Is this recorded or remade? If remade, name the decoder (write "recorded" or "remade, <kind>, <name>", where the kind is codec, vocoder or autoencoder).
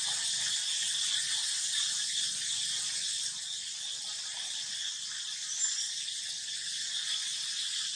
recorded